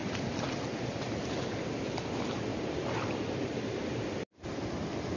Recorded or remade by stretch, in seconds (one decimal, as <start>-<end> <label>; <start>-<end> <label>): 0.0-1.3 recorded; 1.3-5.2 remade